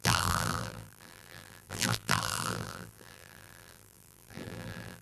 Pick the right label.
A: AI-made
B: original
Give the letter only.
A